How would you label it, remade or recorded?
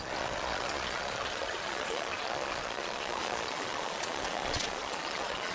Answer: remade